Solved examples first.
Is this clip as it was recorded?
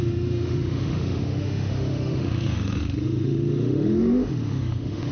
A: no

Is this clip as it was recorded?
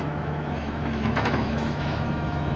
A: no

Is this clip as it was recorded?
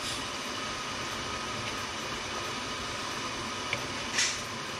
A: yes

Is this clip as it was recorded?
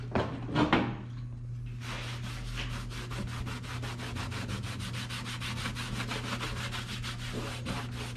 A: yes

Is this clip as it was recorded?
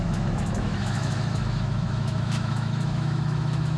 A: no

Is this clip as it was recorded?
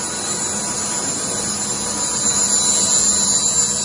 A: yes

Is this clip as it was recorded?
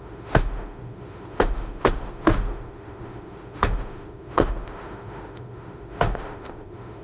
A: no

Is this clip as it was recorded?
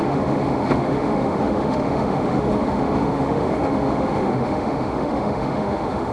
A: no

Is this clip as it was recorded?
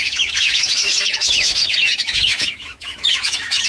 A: no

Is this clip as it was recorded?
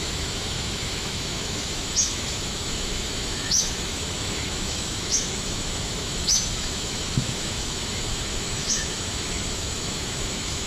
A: no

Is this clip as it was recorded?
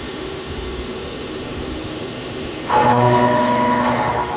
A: no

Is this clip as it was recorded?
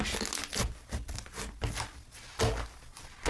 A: yes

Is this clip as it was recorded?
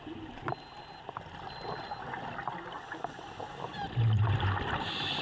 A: yes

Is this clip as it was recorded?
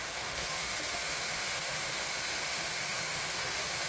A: no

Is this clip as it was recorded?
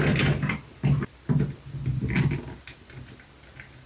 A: yes